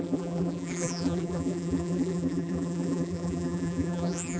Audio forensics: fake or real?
fake